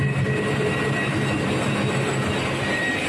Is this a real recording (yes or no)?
yes